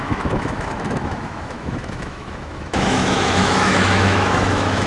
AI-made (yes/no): yes